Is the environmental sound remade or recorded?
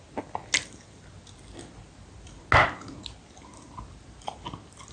recorded